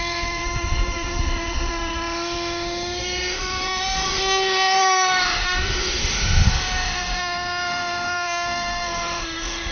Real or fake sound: fake